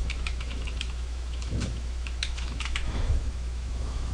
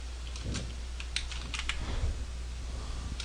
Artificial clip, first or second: first